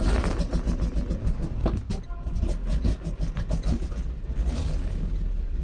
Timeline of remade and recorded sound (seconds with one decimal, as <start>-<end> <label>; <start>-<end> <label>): 0.0-1.2 recorded; 1.2-1.9 remade; 1.9-5.6 recorded